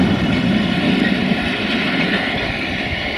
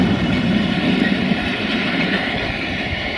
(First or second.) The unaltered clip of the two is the first